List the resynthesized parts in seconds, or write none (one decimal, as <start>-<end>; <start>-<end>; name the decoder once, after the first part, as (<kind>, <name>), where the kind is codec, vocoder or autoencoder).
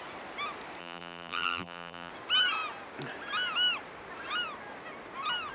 0.8-2.1 (vocoder, BigVGAN v2)